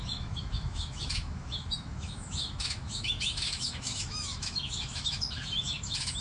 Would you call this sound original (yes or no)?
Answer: no